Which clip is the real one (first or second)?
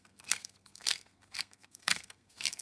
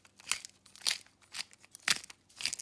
second